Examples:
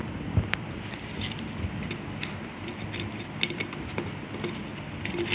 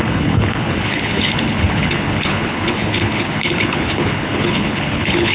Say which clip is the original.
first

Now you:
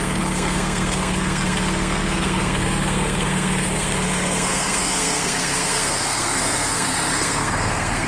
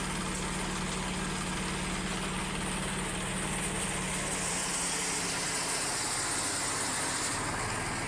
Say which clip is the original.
second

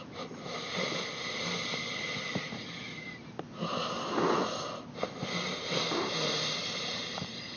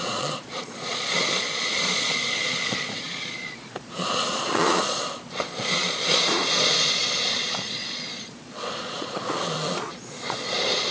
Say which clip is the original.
first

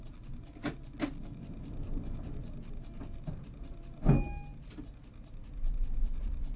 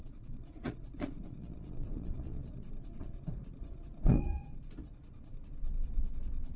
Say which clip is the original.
first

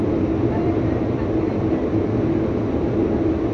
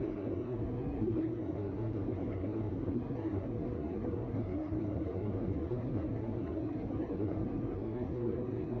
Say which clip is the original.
first